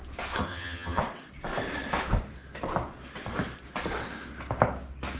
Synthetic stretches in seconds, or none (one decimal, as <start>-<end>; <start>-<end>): 0.4-1.0